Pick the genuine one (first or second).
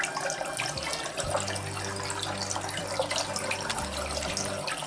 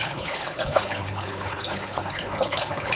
first